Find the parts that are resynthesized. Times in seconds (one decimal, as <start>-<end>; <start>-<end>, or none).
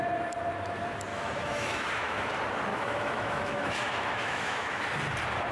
1.1-2.3; 2.7-4.8